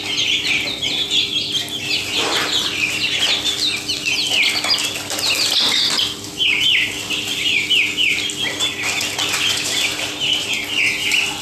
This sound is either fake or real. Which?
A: real